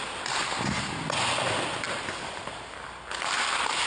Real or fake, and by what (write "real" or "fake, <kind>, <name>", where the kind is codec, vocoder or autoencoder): real